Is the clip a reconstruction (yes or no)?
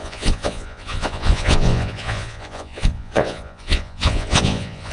yes